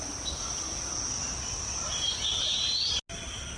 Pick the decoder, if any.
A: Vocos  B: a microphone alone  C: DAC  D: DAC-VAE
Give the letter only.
B